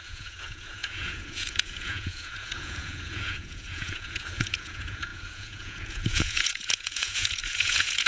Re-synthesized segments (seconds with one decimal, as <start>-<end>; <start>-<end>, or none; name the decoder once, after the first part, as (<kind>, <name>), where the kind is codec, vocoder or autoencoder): 0.0-8.1 (vocoder, Vocos)